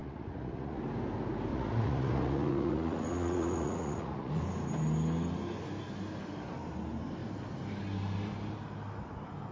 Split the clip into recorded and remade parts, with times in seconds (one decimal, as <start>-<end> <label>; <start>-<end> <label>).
0.0-0.8 remade; 0.8-1.5 recorded; 1.5-4.4 remade; 4.4-9.5 recorded